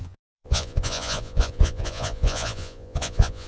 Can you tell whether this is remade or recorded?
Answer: remade